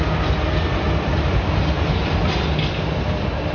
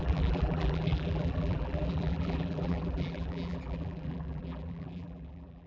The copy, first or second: second